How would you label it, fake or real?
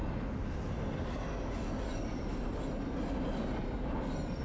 real